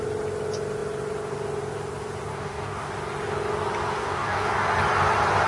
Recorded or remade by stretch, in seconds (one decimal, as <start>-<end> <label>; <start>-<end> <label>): 0.0-2.3 recorded; 2.3-2.9 remade; 2.9-4.0 recorded; 4.0-4.5 remade; 4.5-5.5 recorded